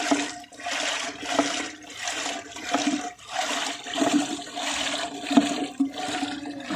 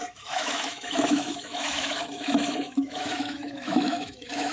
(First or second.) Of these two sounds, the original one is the first